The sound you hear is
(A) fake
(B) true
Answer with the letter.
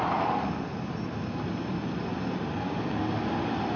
B